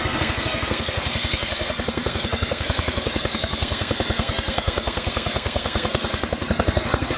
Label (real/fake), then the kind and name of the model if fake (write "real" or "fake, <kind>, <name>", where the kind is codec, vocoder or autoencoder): fake, codec, SNAC